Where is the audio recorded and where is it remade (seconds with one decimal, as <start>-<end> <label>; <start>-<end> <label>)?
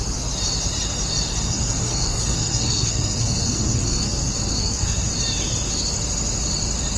0.0-1.3 recorded; 1.3-5.1 remade; 5.1-7.0 recorded